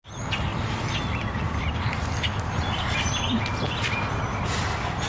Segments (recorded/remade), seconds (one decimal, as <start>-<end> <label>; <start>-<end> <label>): 0.0-5.1 recorded